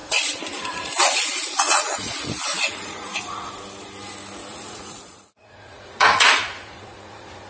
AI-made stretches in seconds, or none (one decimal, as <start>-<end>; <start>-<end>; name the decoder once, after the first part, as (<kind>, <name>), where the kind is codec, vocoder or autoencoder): 0.0-3.5 (vocoder, Vocos); 4.5-7.5